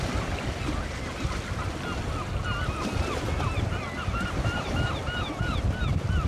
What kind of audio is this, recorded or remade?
recorded